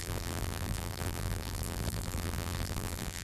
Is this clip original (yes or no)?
no